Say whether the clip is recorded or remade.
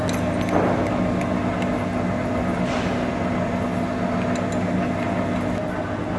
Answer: recorded